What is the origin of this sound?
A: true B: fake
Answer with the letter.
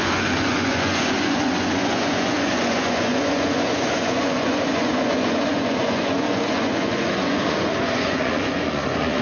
B